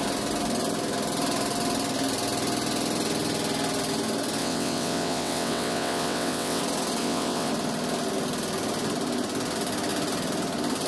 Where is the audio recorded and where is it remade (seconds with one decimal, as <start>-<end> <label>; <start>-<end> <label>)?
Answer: 0.0-4.4 recorded; 4.4-6.6 remade; 6.6-7.0 recorded; 7.0-7.5 remade; 7.5-10.9 recorded